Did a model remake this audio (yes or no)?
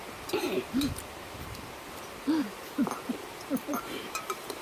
yes